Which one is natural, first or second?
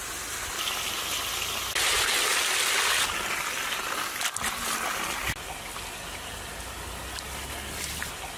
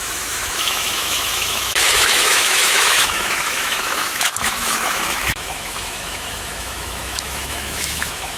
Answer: first